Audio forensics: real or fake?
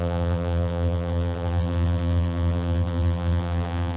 fake